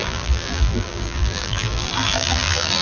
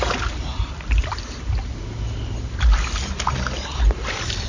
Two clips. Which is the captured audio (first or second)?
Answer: second